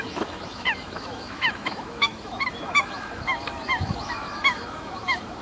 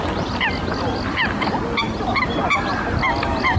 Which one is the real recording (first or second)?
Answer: second